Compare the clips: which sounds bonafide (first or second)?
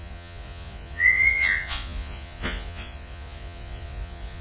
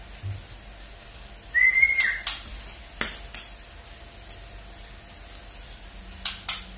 second